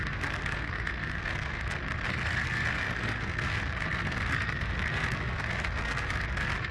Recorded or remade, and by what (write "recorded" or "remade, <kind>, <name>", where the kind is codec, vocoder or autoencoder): remade, codec, SNAC